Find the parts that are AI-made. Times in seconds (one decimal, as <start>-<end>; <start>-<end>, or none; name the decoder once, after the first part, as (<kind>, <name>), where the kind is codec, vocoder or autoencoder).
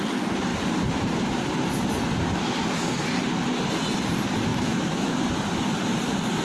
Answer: 4.5-5.2 (autoencoder, DAC-VAE)